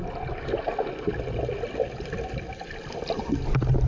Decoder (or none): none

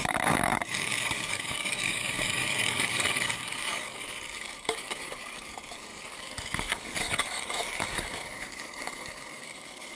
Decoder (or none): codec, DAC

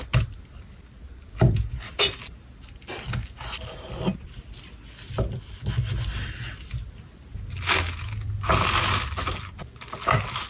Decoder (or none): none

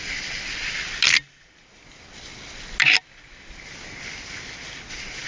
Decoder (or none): none